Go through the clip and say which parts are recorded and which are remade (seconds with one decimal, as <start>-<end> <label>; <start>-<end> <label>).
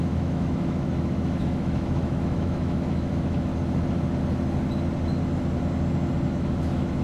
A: 0.0-3.5 remade; 3.5-6.3 recorded; 6.3-7.0 remade